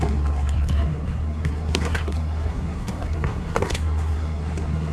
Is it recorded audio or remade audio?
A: remade